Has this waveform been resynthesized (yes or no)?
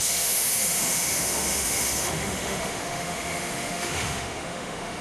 yes